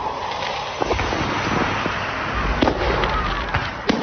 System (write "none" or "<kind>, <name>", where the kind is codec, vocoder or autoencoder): none